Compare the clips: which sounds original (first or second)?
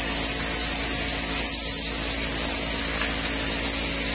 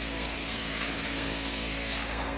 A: first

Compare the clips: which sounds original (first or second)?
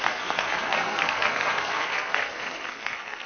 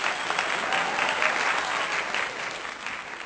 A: second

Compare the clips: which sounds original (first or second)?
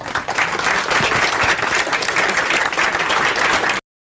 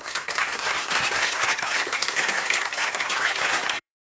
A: first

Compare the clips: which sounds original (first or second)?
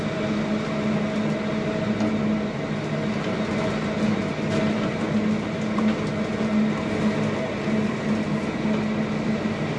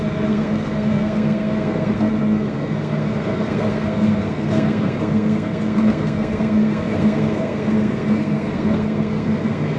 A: first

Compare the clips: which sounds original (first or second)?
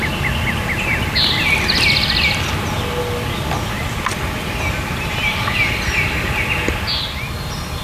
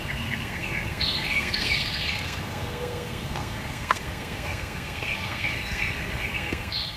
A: first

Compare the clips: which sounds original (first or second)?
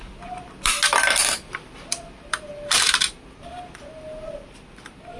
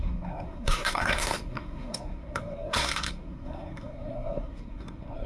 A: first